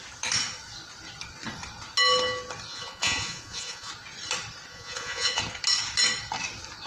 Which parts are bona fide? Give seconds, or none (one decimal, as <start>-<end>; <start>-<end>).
0.0-2.7; 3.9-4.7; 5.4-6.9